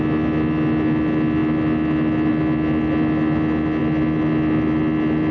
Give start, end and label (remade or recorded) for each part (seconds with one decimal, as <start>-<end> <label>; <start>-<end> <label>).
0.0-5.3 recorded